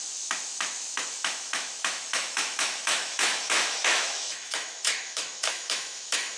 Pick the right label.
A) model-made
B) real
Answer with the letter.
A